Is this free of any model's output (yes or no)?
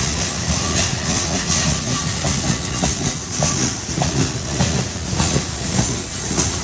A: no